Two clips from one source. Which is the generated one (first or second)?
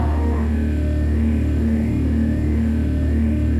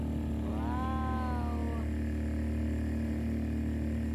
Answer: first